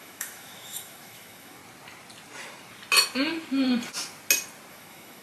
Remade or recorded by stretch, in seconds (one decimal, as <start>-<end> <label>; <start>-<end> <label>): 0.0-1.6 remade; 1.6-4.7 recorded; 4.7-5.2 remade